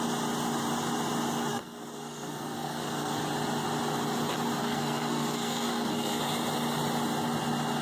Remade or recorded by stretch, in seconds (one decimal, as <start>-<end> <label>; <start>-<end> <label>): 0.0-1.5 recorded; 1.5-3.2 remade; 3.2-4.6 recorded; 4.6-6.2 remade; 6.2-7.8 recorded

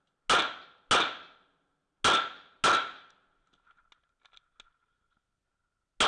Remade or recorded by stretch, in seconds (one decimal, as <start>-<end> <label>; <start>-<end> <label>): 0.0-6.1 recorded

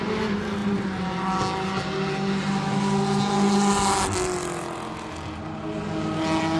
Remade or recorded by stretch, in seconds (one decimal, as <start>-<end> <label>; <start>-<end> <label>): 0.0-6.6 recorded

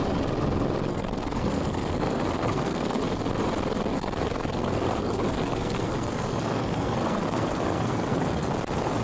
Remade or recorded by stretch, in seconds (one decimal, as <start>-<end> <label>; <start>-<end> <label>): 0.0-0.9 recorded; 0.9-3.0 remade; 3.0-3.9 recorded; 3.9-8.5 remade; 8.5-9.0 recorded

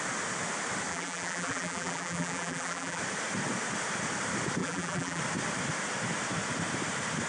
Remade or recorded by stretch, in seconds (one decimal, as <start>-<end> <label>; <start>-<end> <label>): 0.0-0.9 recorded; 0.9-3.0 remade; 3.0-4.6 recorded; 4.6-5.2 remade; 5.2-7.3 recorded

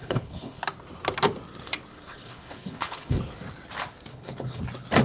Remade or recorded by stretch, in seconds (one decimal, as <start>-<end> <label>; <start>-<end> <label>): 0.0-0.6 remade; 0.6-1.9 recorded; 1.9-3.2 remade; 3.2-4.1 recorded; 4.1-4.6 remade; 4.6-5.0 recorded

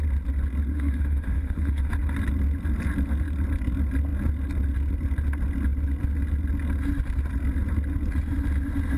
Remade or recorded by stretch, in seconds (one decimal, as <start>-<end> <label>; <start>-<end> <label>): 0.0-0.7 recorded; 0.7-1.9 remade; 1.9-9.0 recorded

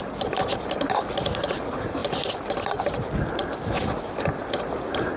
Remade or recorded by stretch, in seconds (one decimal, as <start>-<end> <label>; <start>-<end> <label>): 0.0-5.2 recorded